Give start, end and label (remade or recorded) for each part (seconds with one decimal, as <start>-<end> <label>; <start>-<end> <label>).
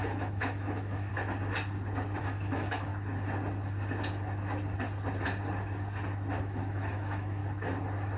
0.0-1.1 remade; 1.1-2.2 recorded; 2.2-2.9 remade; 2.9-6.4 recorded; 6.4-7.4 remade; 7.4-8.2 recorded